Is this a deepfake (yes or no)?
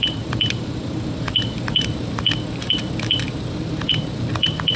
yes